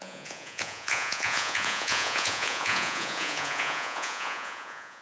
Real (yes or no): no